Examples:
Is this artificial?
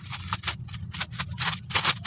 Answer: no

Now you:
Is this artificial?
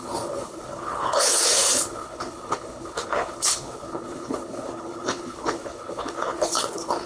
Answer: yes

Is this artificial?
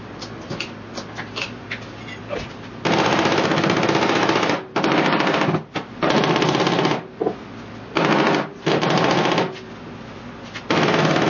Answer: no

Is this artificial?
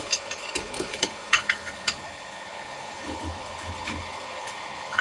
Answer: yes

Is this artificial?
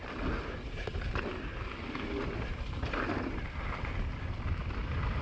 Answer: no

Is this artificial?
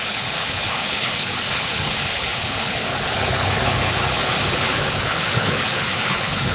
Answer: yes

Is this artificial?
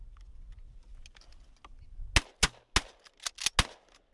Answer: no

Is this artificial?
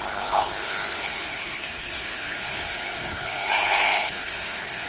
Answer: yes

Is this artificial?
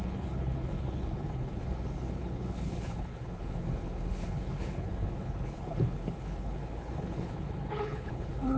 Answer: yes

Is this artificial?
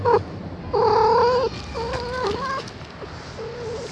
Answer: no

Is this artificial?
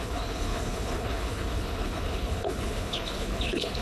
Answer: yes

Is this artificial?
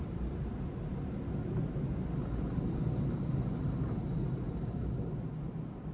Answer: no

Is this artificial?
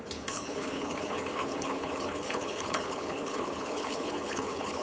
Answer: yes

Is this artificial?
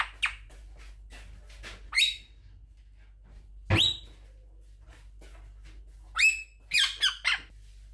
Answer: no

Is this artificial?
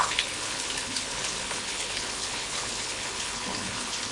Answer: yes